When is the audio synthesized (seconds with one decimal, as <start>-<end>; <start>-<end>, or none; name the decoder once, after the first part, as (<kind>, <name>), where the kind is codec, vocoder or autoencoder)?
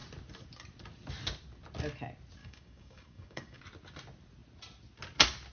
2.4-3.6 (codec, DAC)